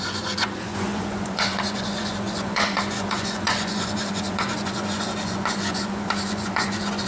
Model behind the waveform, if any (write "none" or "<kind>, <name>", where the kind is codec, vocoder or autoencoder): vocoder, Vocos